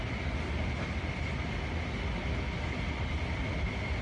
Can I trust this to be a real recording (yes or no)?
yes